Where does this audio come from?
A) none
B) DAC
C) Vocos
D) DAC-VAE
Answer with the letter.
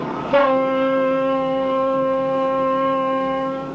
B